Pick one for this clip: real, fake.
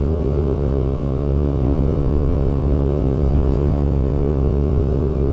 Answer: fake